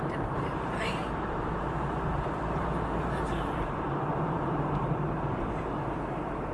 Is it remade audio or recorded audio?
remade